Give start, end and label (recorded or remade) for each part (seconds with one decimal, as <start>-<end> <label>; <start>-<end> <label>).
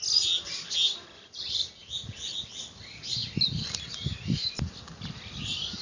0.0-5.8 recorded